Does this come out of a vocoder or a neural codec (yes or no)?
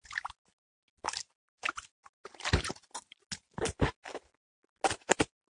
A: no